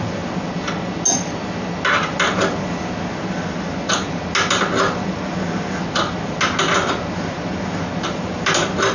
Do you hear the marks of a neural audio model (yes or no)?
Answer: no